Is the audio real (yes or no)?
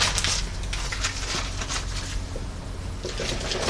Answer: yes